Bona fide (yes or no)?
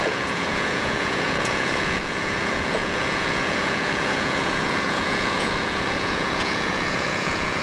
no